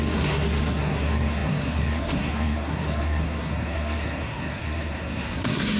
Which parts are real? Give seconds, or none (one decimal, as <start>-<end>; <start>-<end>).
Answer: none